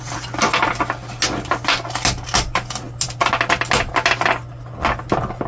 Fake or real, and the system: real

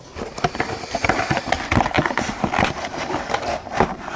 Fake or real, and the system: real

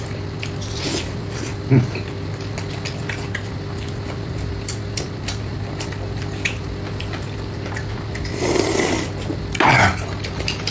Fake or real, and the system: real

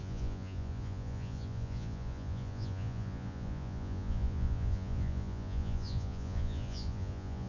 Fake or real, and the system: fake, vocoder, Vocos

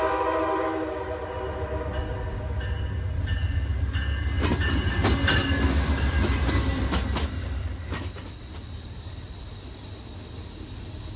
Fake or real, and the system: real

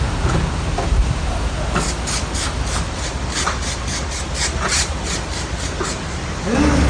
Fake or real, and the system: real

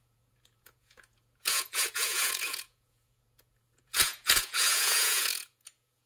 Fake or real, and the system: fake, vocoder, Vocos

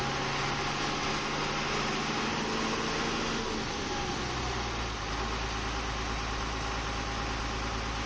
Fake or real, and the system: real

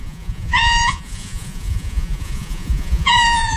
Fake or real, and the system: fake, vocoder, Vocos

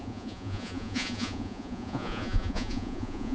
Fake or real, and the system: fake, vocoder, Vocos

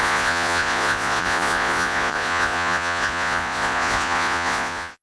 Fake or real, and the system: fake, vocoder, Vocos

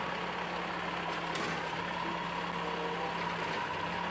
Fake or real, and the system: real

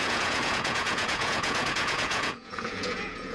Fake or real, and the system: fake, vocoder, Vocos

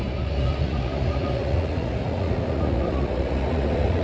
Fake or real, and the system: fake, vocoder, Vocos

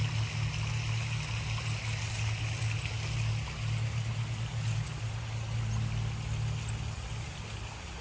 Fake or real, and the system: real